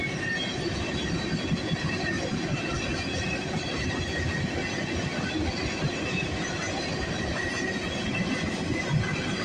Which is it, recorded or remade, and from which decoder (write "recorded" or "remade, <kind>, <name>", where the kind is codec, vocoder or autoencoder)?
recorded